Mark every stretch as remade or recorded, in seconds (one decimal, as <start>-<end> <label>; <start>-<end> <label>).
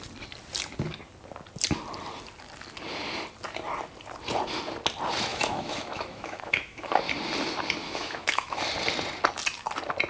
0.0-5.3 recorded; 5.3-6.9 remade; 6.9-7.8 recorded; 7.8-8.6 remade; 8.6-10.1 recorded